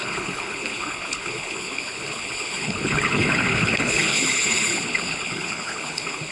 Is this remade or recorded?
remade